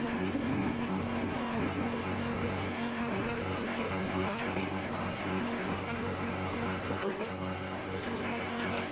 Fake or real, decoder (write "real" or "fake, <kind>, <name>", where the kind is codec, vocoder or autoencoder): fake, codec, SNAC